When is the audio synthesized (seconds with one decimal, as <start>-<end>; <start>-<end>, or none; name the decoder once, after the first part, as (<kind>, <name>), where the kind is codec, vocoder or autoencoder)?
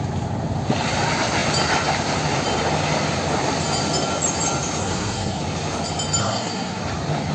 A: 4.8-5.4 (codec, SNAC); 6.2-6.8